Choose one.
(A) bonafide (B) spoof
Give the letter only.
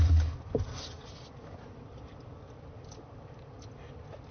A